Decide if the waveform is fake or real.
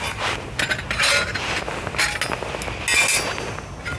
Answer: real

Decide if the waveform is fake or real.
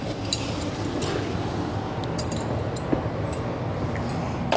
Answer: real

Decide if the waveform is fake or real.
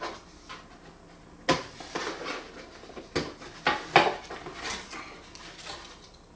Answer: real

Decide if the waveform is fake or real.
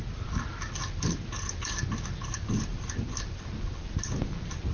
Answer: real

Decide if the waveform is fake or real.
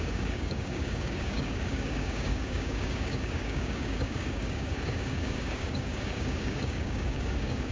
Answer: fake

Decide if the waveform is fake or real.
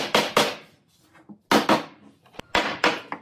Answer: real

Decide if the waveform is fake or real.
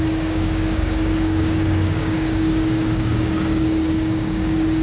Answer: fake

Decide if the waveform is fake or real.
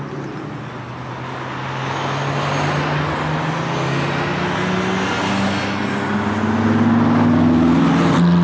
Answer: real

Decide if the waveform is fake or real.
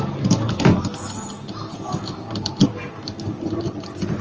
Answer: real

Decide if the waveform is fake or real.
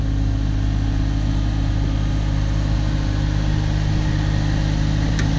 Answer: real